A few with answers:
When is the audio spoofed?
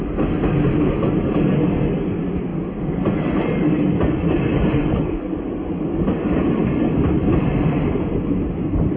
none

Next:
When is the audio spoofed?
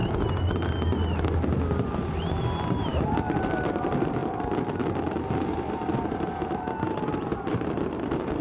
2.7-4.2 (vocoder, BigVGAN v2); 5.4-8.4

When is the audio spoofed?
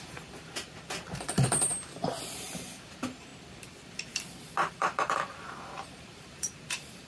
0.0-1.7 (vocoder, BigVGAN v2); 2.7-3.3; 4.7-7.1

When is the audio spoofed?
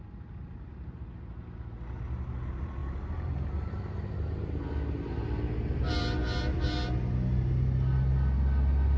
none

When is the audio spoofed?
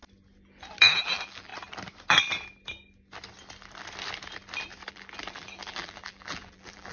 1.0-1.5 (vocoder, BigVGAN v2); 4.9-6.9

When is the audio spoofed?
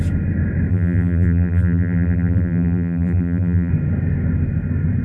0.7-3.7 (vocoder, BigVGAN v2)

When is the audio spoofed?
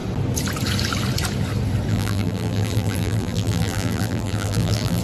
1.9-5.0 (vocoder, BigVGAN v2)